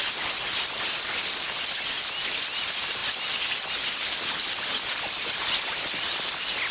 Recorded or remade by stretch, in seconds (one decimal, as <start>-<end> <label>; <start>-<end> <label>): 0.0-6.7 recorded